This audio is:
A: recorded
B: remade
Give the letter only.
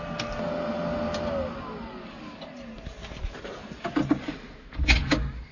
A